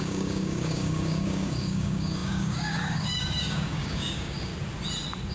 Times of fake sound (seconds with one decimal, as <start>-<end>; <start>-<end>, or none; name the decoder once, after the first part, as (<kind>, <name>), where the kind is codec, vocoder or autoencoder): 0.0-4.5 (codec, DAC)